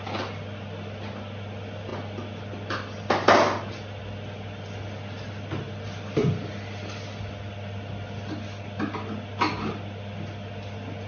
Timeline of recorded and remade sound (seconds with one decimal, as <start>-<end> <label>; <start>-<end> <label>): 0.0-11.1 recorded